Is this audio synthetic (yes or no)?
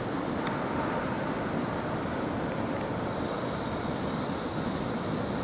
no